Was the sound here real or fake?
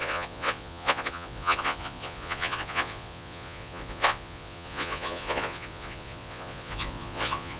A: fake